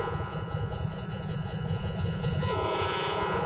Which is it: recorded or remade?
remade